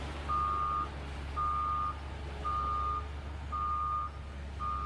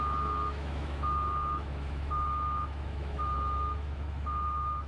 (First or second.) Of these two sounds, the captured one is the first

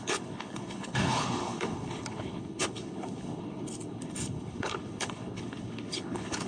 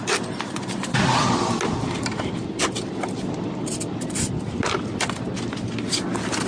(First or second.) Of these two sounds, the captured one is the second